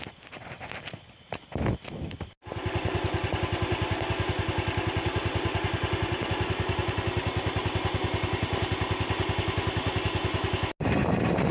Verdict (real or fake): real